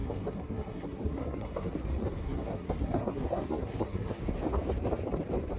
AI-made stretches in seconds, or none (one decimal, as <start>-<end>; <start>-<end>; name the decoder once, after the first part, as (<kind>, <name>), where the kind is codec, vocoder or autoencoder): 0.0-1.7 (codec, SNAC); 2.2-4.2